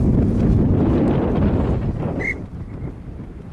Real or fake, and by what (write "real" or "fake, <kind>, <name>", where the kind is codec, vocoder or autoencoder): real